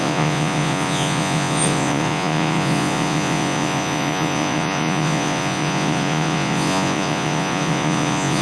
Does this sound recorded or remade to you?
remade